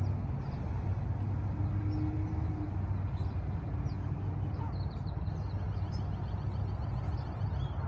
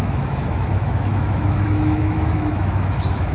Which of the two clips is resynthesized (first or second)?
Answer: second